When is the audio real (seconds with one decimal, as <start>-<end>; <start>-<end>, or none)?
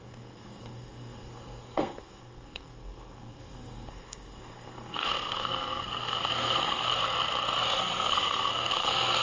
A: 6.9-7.8